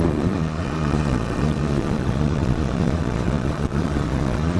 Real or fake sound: fake